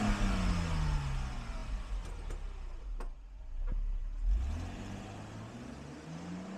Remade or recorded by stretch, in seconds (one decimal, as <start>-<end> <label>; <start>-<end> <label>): 0.0-6.6 recorded